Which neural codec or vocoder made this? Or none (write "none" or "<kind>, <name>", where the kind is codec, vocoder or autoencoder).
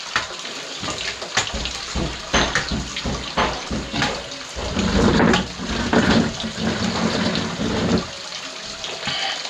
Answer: none